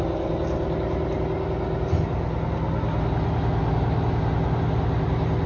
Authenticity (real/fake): real